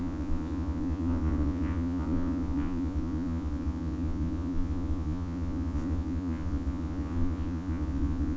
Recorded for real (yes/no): no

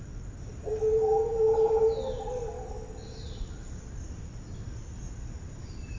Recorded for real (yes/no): yes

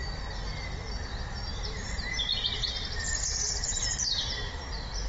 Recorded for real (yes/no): no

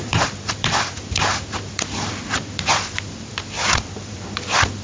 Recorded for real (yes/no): no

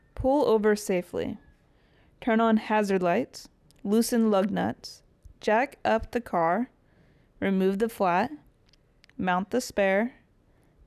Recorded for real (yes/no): yes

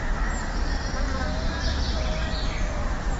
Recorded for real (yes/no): yes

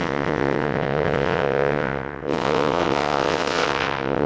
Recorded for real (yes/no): no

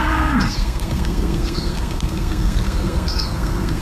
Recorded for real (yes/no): no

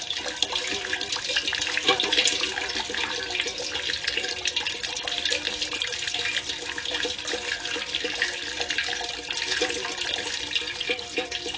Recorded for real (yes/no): yes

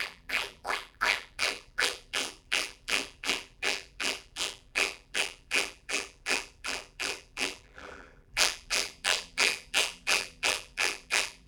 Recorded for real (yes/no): no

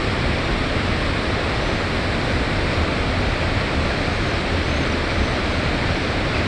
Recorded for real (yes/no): yes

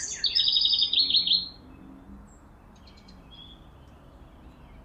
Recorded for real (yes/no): yes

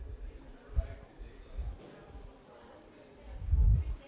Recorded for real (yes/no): yes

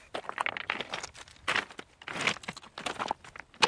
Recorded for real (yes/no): yes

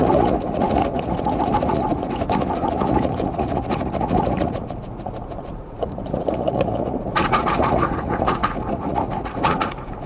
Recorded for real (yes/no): no